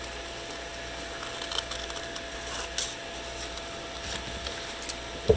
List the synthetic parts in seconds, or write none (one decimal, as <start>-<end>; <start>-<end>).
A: none